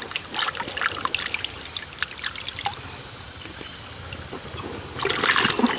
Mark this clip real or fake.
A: real